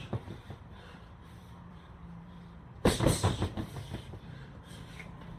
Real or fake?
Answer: fake